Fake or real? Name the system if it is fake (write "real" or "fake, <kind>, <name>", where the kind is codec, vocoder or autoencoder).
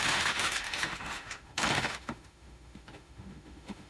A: fake, autoencoder, DAC-VAE